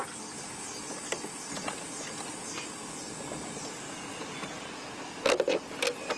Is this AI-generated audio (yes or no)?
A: no